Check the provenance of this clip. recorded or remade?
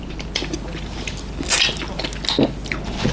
recorded